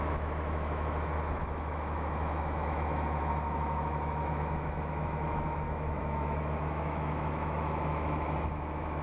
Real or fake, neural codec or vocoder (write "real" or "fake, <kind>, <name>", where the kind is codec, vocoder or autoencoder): fake, autoencoder, DAC-VAE